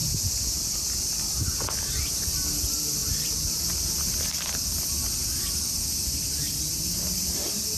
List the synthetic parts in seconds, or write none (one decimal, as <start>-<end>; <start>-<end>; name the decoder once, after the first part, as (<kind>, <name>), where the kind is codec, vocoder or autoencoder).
none